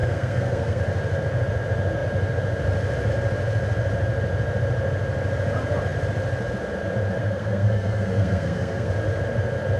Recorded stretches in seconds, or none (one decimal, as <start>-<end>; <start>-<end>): 0.8-7.2; 8.9-9.8

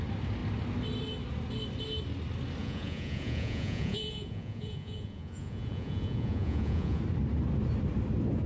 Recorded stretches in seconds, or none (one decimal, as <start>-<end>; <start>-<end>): 0.0-2.6; 7.0-8.5

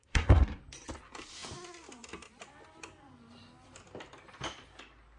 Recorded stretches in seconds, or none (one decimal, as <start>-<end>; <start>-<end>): 0.6-5.2

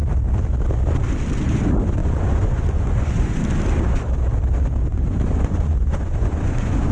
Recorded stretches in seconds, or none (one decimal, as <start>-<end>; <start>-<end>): 0.0-2.0; 3.4-4.9

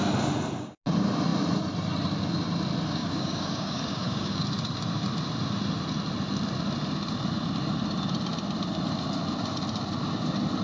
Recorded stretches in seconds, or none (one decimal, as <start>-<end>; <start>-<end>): 0.0-3.0; 4.4-10.6

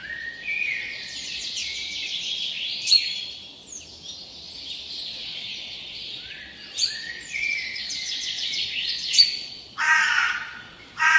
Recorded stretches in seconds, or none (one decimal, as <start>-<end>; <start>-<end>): 1.6-4.9